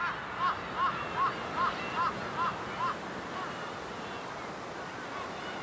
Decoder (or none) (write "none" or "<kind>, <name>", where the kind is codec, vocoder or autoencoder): none